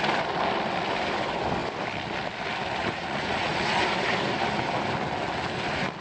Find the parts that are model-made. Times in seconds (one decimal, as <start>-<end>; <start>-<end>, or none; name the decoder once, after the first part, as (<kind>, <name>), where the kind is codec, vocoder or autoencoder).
2.8-3.5 (vocoder, Vocos)

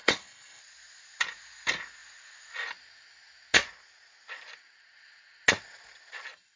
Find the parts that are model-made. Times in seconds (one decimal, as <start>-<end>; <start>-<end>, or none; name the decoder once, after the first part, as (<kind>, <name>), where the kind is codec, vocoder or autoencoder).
0.0-0.6 (codec, HILCodec)

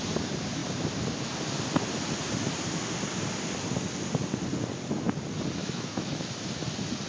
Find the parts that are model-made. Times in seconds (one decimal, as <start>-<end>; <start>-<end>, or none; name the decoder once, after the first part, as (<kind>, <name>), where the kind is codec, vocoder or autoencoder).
5.6-6.3 (autoencoder, DAC-VAE)

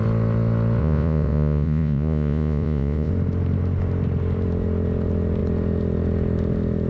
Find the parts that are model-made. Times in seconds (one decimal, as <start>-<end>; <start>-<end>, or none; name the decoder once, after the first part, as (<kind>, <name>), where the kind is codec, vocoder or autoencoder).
0.8-3.1 (vocoder, Vocos)

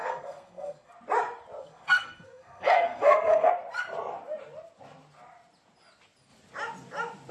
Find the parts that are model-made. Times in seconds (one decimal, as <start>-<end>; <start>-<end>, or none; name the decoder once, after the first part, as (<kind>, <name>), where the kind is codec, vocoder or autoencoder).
0.0-0.9 (codec, SNAC); 1.6-3.5

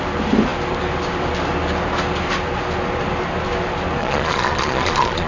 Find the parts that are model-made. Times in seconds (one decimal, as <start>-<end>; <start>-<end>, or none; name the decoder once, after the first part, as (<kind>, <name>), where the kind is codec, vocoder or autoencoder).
4.0-5.3 (vocoder, Vocos)

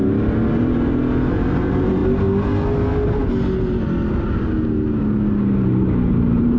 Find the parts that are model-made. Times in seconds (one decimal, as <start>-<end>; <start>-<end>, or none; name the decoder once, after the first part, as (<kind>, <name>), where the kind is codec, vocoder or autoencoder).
none

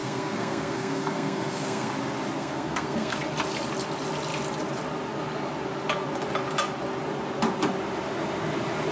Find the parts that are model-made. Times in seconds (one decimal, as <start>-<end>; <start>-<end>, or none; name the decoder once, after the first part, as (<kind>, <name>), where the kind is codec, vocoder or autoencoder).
0.0-1.9 (codec, SNAC); 2.4-3.2